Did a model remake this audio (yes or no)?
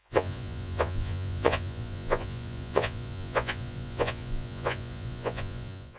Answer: yes